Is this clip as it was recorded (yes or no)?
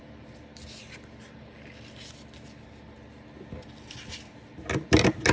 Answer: yes